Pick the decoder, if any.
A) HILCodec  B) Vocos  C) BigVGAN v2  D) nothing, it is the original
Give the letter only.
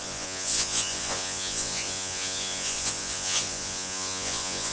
B